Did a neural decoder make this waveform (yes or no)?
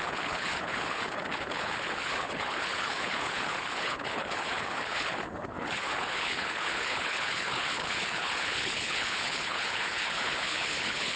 yes